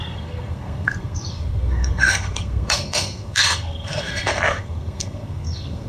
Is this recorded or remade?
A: remade